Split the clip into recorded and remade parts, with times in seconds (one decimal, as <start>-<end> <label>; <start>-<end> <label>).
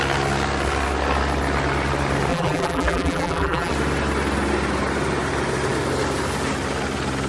0.0-2.3 recorded; 2.3-3.7 remade; 3.7-7.3 recorded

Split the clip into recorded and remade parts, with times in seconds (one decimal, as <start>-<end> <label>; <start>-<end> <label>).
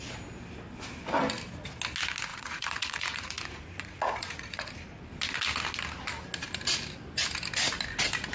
0.0-2.3 recorded; 2.3-4.7 remade; 4.7-8.3 recorded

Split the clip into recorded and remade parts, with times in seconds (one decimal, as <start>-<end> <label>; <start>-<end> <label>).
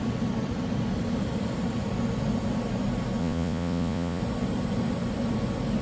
0.0-3.2 recorded; 3.2-4.2 remade; 4.2-5.8 recorded